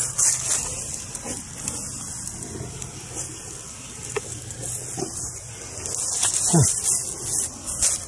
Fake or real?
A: real